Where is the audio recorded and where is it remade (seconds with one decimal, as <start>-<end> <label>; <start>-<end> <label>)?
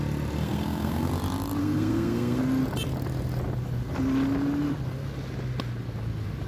0.0-0.4 recorded; 0.4-1.1 remade; 1.1-1.6 recorded; 1.6-2.4 remade; 2.4-6.5 recorded